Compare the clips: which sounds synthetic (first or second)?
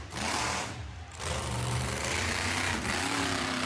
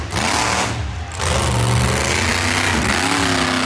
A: first